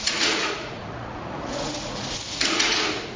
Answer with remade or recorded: remade